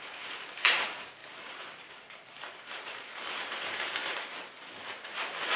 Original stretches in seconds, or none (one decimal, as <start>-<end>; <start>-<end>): none